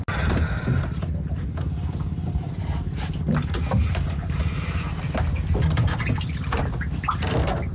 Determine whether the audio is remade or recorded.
recorded